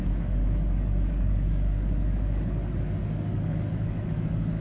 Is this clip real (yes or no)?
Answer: no